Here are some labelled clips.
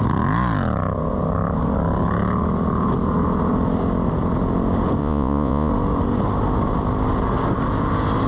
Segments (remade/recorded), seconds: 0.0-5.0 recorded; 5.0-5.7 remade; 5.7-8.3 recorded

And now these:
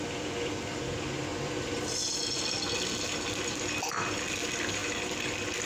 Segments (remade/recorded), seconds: 0.0-1.3 recorded; 1.3-2.5 remade; 2.5-5.7 recorded

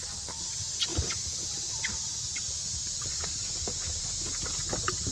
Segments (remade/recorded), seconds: 0.0-5.1 recorded

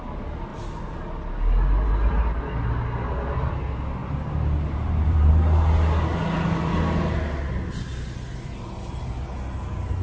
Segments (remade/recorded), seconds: 0.0-0.5 recorded; 0.5-1.0 remade; 1.0-4.0 recorded; 4.0-5.3 remade; 5.3-10.0 recorded

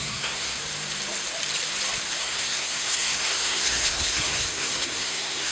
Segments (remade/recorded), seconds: 0.0-0.6 remade; 0.6-2.2 recorded; 2.2-5.5 remade

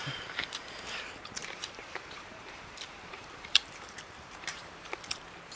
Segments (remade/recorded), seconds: 0.0-1.4 recorded; 1.4-4.8 remade; 4.8-5.6 recorded

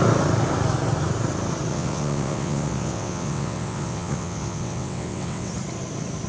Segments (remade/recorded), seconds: 0.0-1.7 recorded; 1.7-5.5 remade; 5.5-6.3 recorded